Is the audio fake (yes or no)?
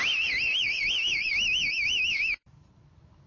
yes